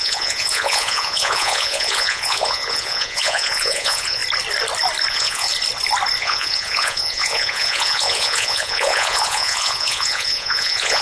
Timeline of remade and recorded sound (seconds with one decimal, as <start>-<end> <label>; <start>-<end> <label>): 0.0-4.2 remade; 4.2-5.1 recorded; 5.1-5.5 remade; 5.5-6.2 recorded; 6.2-11.0 remade

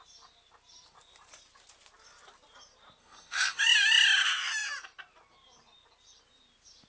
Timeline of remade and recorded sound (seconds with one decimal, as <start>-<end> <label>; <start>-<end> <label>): 0.0-3.0 recorded; 3.0-3.6 remade; 3.6-6.9 recorded

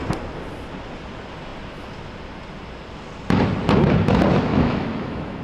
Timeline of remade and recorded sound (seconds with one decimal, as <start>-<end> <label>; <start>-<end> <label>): 0.0-4.5 recorded; 4.5-5.4 remade

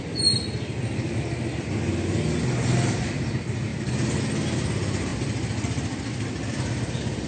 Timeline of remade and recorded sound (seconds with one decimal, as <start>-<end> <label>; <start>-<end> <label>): 0.0-7.3 recorded

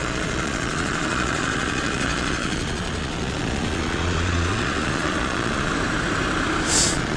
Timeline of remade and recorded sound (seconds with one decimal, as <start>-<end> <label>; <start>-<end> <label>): 0.0-5.7 remade; 5.7-6.8 recorded; 6.8-7.2 remade

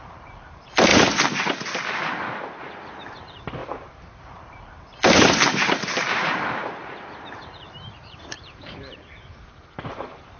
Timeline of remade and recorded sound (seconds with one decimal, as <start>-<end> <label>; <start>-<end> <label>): 0.0-0.9 remade; 0.9-2.6 recorded; 2.6-10.4 remade

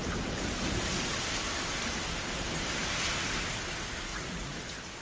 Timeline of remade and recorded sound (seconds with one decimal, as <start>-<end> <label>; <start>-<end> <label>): 0.0-4.1 recorded; 4.1-4.6 remade; 4.6-5.0 recorded